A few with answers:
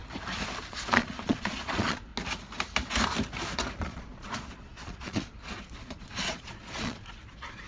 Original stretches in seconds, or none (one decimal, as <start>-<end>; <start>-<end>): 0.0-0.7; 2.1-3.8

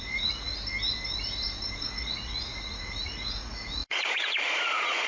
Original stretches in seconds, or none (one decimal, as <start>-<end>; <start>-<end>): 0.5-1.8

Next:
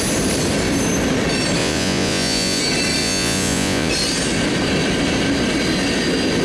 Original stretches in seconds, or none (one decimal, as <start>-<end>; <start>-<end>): 0.0-1.6; 2.6-3.0; 3.9-6.4

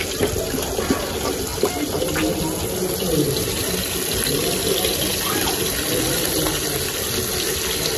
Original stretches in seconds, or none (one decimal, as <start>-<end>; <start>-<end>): 0.0-8.0